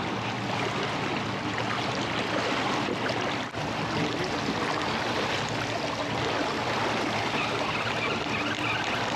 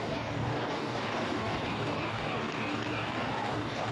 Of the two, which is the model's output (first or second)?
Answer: second